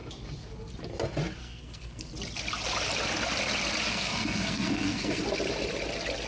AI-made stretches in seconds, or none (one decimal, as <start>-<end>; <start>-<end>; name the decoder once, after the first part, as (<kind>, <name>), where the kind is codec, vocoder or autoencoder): 1.4-2.1 (codec, SNAC); 3.9-5.2